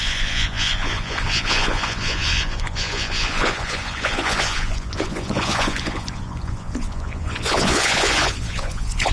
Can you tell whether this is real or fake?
fake